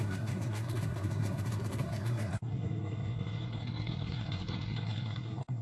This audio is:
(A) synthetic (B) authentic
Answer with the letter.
A